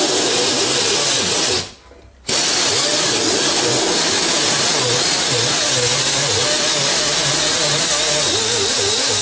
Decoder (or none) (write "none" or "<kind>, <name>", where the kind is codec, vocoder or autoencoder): none